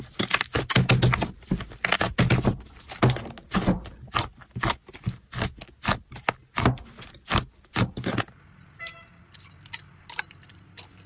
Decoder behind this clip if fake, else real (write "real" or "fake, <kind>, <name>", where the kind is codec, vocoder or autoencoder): real